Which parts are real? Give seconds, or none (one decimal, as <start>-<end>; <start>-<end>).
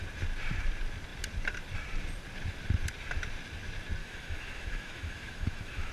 0.0-4.0